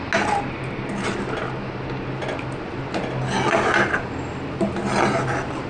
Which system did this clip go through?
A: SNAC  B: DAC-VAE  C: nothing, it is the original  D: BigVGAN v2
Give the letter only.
C